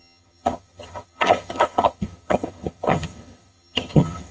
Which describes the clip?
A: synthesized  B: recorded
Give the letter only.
A